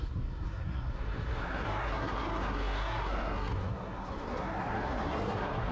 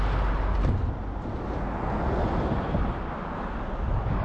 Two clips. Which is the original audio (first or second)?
second